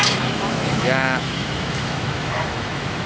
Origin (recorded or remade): remade